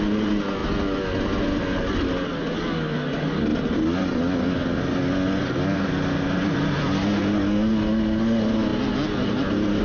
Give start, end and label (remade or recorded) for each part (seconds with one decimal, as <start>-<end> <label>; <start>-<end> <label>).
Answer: 0.0-9.8 recorded